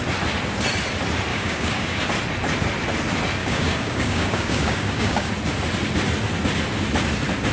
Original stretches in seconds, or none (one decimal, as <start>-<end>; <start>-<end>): 0.0-1.3; 2.0-3.4; 5.3-7.5